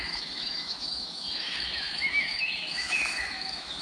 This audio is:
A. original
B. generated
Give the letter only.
B